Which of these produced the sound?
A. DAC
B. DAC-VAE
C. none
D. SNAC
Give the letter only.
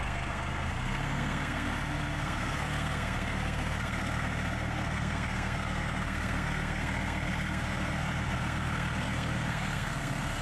D